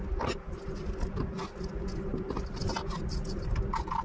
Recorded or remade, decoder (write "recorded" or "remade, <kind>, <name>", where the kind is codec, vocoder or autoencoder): recorded